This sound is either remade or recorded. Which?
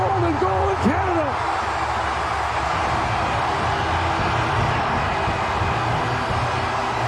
recorded